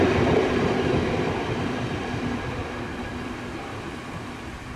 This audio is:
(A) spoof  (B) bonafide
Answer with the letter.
B